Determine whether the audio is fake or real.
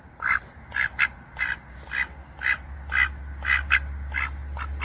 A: real